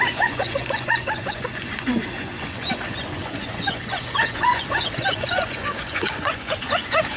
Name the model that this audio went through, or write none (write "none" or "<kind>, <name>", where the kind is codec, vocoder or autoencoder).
vocoder, Vocos